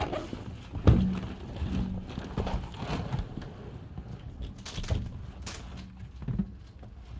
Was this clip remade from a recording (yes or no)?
no